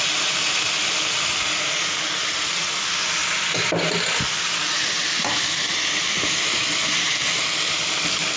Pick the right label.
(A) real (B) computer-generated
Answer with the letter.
A